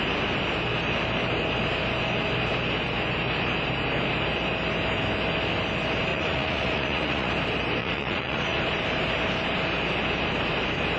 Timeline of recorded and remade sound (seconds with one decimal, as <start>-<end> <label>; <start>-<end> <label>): 0.0-6.1 recorded; 6.1-7.3 remade; 7.3-7.8 recorded; 7.8-8.6 remade; 8.6-11.0 recorded